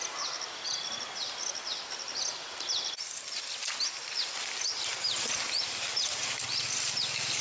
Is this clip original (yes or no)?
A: yes